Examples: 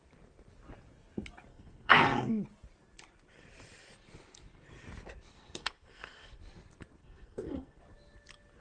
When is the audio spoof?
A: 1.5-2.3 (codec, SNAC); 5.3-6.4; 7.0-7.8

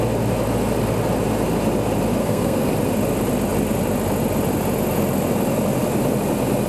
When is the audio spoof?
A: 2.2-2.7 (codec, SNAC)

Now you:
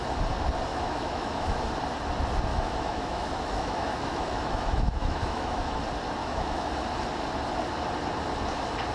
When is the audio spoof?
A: 0.7-1.6 (autoencoder, DAC-VAE); 2.5-5.8; 6.2-6.7

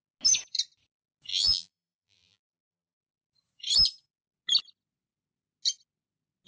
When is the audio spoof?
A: 1.3-3.0 (vocoder, BigVGAN v2)

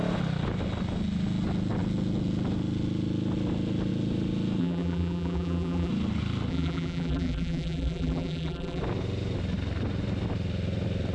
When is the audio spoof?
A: 4.6-5.9 (vocoder, BigVGAN v2); 6.5-8.8

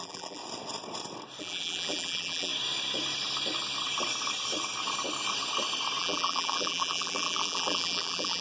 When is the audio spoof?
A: 0.0-0.4 (vocoder, BigVGAN v2); 1.4-2.5; 6.0-8.4

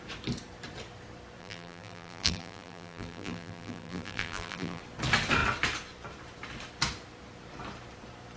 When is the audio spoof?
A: 1.4-4.8 (vocoder, BigVGAN v2)

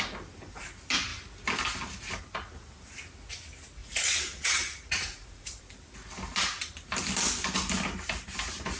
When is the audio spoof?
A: 3.8-5.6 (vocoder, Vocos)